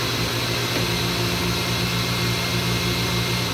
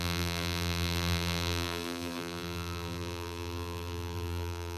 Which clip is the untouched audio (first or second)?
first